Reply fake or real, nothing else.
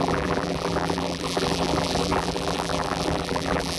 fake